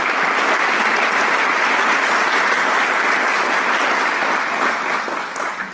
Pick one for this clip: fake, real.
real